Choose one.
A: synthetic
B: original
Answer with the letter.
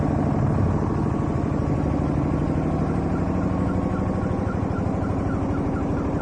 B